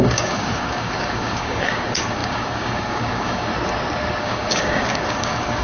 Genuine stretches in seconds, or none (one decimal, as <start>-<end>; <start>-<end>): 3.5-4.2